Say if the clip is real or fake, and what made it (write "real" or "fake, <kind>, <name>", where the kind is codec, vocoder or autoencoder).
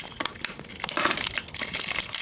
real